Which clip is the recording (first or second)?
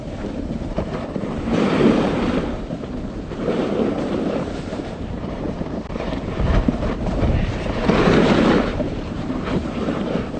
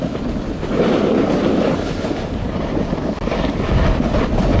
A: second